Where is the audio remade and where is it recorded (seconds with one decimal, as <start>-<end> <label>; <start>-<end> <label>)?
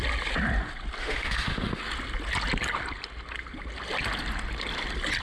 0.0-1.0 recorded; 1.0-1.8 remade; 1.8-5.2 recorded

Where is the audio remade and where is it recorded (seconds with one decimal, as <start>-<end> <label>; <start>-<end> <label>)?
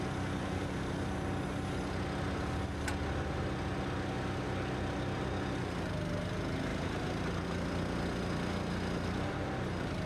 0.0-10.1 recorded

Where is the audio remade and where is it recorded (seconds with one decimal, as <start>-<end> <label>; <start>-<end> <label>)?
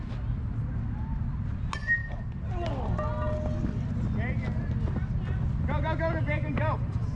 0.0-6.2 recorded; 6.2-7.2 remade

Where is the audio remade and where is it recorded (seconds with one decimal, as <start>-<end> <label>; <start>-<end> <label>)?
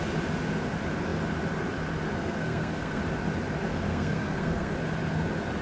0.0-2.2 recorded; 2.2-3.0 remade; 3.0-3.7 recorded; 3.7-4.7 remade; 4.7-5.6 recorded